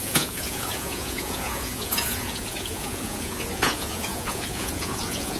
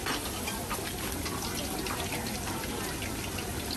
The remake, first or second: first